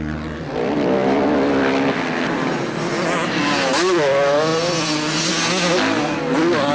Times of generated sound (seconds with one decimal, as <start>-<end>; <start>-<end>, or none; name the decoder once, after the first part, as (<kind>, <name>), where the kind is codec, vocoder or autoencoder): none